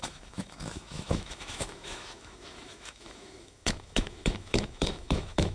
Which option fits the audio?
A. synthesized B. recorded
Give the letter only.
A